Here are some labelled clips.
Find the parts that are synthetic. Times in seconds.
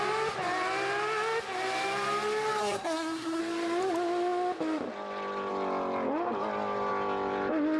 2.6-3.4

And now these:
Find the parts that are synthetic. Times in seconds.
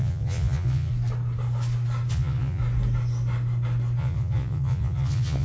0.0-0.9; 2.1-2.6; 4.0-5.4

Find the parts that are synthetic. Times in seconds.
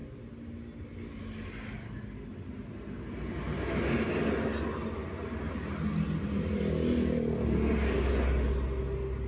none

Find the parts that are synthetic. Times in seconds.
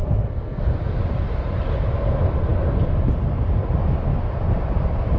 0.0-0.7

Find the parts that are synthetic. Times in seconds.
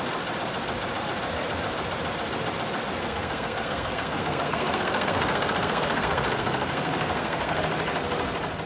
3.0-7.6